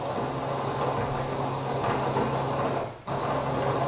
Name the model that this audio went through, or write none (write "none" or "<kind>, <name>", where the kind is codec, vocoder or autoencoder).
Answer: none